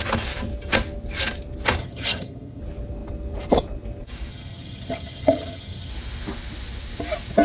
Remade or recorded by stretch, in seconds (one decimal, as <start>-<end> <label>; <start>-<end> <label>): 0.0-1.8 recorded; 1.8-2.6 remade; 2.6-4.3 recorded; 4.3-5.9 remade; 5.9-7.4 recorded